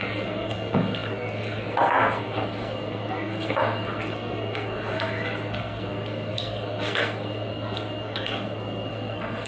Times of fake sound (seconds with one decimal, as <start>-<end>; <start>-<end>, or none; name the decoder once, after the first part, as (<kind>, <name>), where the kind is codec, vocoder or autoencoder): 0.0-9.5 (codec, SNAC)